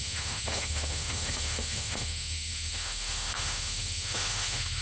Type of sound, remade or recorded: remade